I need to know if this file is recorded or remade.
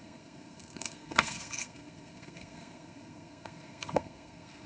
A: remade